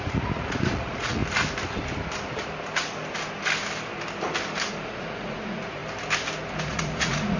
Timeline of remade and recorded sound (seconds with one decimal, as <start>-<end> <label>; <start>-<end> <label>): 0.0-1.2 remade; 1.2-4.7 recorded; 4.7-5.8 remade; 5.8-6.6 recorded; 6.6-7.4 remade